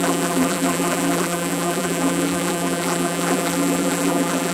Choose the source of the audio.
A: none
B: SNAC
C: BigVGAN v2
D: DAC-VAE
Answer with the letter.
C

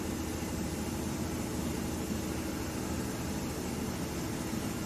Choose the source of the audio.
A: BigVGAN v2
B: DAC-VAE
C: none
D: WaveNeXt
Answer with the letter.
C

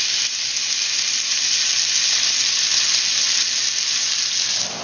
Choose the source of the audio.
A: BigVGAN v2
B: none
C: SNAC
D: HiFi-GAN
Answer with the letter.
B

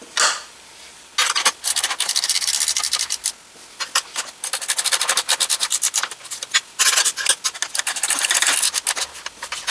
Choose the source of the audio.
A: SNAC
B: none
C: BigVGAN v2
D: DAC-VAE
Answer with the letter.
B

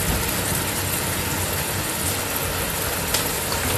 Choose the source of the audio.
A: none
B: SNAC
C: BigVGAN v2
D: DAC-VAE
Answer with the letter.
A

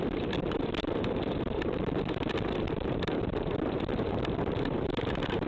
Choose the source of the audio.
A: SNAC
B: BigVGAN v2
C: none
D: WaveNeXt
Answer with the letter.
B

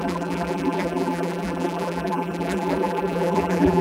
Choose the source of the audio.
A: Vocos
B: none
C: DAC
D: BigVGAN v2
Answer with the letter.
D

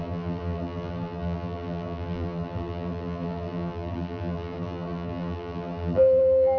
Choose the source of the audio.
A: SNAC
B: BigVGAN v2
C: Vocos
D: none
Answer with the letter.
B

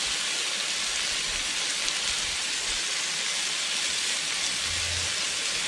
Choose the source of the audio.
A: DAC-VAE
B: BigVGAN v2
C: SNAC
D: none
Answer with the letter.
D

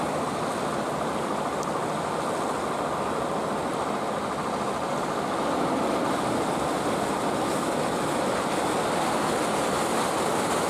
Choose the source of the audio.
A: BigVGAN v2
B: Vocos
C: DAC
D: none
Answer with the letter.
D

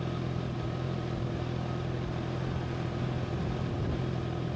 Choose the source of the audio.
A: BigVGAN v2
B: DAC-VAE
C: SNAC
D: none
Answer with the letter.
D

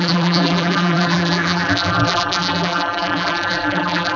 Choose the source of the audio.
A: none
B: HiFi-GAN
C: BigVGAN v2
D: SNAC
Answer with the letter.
C